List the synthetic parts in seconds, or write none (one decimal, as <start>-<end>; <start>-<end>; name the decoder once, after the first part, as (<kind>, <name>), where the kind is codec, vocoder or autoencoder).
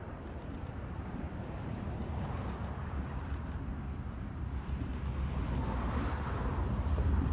0.0-3.7 (vocoder, BigVGAN v2); 5.4-7.3